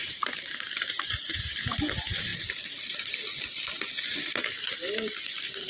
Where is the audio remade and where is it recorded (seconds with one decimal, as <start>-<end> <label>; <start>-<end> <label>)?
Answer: 0.0-5.7 remade